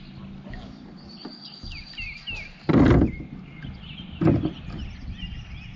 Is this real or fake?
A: real